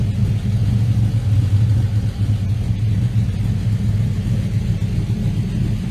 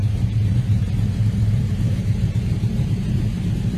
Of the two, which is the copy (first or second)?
second